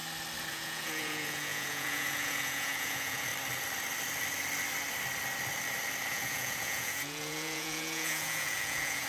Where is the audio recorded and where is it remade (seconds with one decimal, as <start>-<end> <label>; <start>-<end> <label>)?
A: 0.0-0.5 recorded; 0.5-3.3 remade; 3.3-6.1 recorded; 6.1-9.1 remade